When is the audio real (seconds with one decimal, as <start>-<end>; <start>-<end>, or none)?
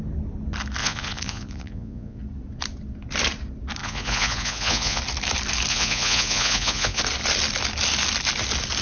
0.0-0.8; 2.2-3.8; 5.0-5.7; 7.0-8.8